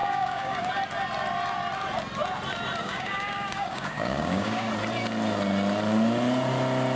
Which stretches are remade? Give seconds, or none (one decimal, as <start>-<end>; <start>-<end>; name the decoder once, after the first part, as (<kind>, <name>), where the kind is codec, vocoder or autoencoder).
0.0-0.7 (codec, DAC); 2.8-4.7